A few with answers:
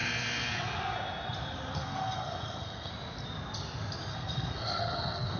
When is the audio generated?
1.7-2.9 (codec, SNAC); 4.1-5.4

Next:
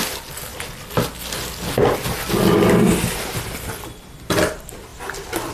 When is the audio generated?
none

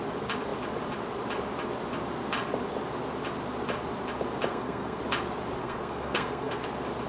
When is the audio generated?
4.5-5.0 (codec, SNAC); 5.6-6.6

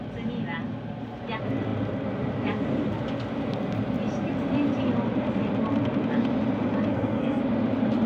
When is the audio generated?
6.9-7.4 (codec, SNAC)

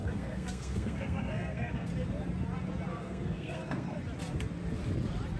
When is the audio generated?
0.0-1.9 (codec, SNAC); 2.9-4.0